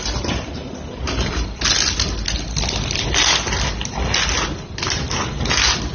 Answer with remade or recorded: recorded